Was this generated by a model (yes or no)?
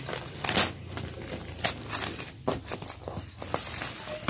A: no